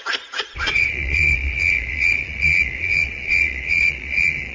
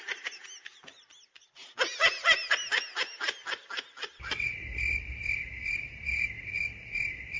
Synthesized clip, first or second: first